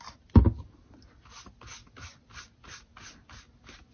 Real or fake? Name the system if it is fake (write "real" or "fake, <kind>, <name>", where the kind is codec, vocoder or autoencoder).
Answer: real